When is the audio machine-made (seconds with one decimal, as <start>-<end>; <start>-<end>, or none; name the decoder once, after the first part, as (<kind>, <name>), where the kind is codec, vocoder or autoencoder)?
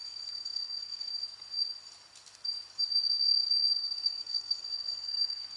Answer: 0.0-1.1 (codec, SNAC); 3.7-5.6